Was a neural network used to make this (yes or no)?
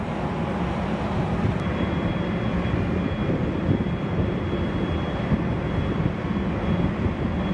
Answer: no